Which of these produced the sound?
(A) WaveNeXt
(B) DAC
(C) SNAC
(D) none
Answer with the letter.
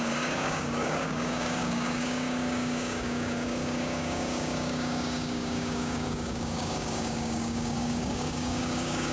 B